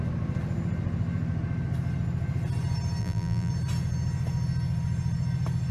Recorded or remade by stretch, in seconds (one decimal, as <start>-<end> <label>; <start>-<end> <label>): 0.0-3.0 recorded; 3.0-3.5 remade; 3.5-5.7 recorded